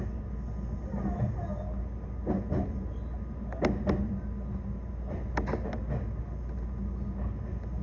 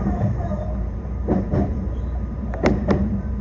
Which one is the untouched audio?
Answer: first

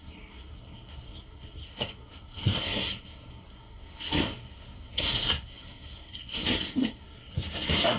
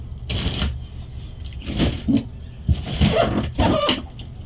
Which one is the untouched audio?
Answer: second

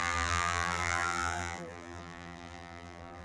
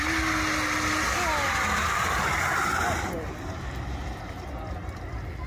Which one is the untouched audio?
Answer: second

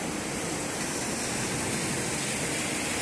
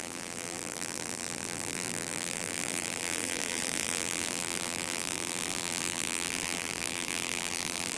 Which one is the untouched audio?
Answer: first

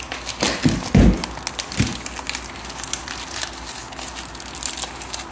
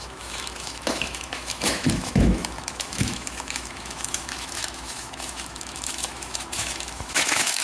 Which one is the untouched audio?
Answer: first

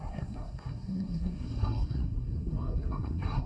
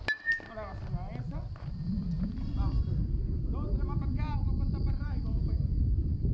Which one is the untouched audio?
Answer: second